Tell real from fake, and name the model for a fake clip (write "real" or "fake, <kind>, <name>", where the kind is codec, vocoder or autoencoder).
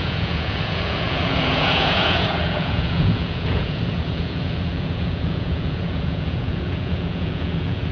fake, vocoder, Vocos